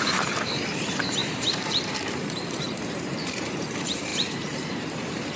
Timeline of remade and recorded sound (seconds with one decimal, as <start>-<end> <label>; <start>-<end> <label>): 0.0-5.4 remade